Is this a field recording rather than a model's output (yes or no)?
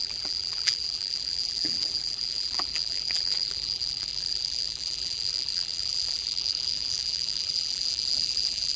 no